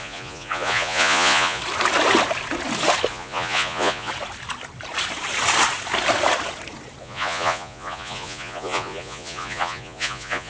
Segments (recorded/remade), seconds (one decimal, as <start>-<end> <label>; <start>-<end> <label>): 0.0-1.6 remade; 1.6-3.1 recorded; 3.1-4.1 remade; 4.1-7.0 recorded; 7.0-10.5 remade